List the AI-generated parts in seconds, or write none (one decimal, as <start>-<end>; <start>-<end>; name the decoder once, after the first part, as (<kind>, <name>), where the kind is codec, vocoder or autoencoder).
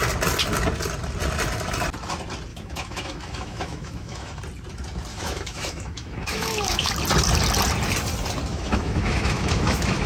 2.5-4.4 (autoencoder, DAC-VAE); 5.1-6.9; 8.5-10.1